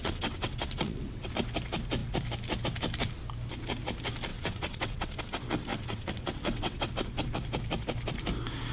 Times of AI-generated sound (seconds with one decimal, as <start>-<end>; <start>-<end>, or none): 0.0-1.3; 4.3-5.2; 5.7-6.9